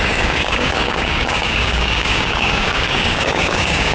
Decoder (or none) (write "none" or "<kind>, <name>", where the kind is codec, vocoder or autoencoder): codec, DAC